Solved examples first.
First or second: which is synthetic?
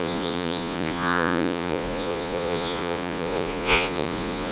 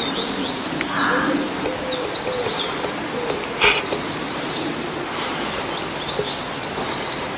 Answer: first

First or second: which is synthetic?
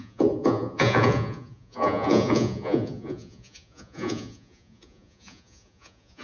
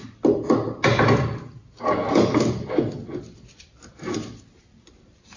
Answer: first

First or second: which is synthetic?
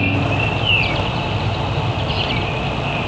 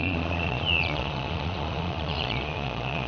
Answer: second